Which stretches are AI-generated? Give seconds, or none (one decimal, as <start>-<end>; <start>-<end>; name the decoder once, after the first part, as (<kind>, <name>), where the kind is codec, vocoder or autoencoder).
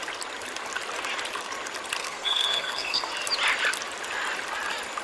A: 2.0-3.1 (codec, SNAC)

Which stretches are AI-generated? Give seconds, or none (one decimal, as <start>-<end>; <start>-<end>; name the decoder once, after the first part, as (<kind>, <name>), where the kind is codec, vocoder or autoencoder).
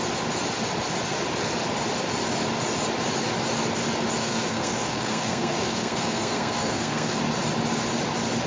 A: 4.2-7.2 (codec, SNAC)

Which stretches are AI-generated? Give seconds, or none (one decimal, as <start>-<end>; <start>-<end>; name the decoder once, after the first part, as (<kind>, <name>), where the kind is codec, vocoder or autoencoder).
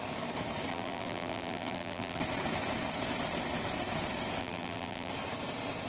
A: 0.7-2.2 (vocoder, BigVGAN v2); 4.4-5.1